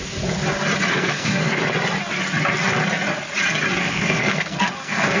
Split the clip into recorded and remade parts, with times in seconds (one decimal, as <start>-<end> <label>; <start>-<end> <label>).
0.0-0.9 recorded; 0.9-1.6 remade; 1.6-3.8 recorded; 3.8-5.2 remade